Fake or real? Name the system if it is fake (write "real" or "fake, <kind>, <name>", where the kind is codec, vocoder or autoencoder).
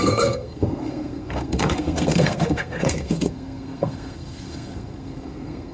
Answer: fake, codec, SNAC